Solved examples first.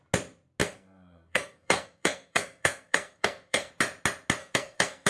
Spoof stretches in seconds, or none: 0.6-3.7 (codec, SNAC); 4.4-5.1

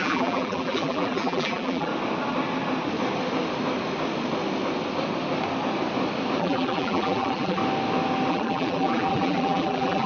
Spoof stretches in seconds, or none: 0.0-1.9 (vocoder, BigVGAN v2); 6.4-7.6; 8.3-10.1

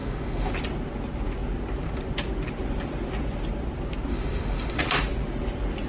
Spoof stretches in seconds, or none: 0.0-0.5 (autoencoder, DAC-VAE); 4.1-4.8

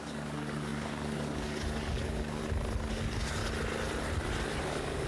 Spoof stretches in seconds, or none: 0.0-2.4 (codec, DAC); 2.9-3.4; 4.6-5.1